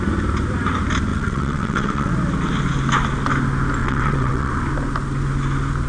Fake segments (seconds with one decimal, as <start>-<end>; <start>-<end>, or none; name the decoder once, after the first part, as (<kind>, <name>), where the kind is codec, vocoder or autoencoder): 1.1-2.1 (vocoder, WaveNeXt); 3.8-4.5